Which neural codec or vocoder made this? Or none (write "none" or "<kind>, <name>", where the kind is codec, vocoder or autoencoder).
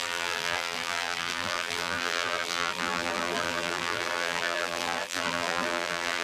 vocoder, BigVGAN v2